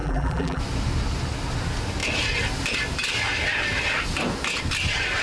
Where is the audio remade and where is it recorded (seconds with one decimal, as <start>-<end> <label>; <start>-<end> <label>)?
0.0-0.6 remade; 0.6-5.2 recorded